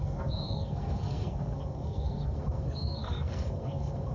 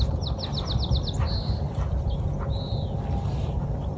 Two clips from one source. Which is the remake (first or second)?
first